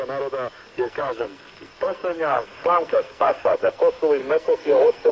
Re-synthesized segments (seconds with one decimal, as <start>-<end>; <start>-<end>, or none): 0.7-3.8; 4.2-5.1